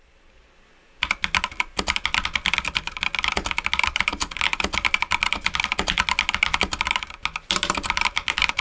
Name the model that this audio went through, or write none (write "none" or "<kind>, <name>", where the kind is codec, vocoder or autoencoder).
none